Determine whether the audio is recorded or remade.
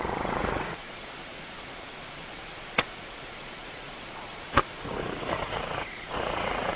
remade